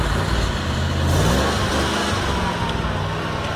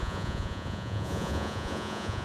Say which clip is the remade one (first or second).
second